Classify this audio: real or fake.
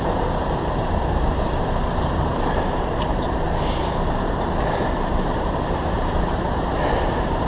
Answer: fake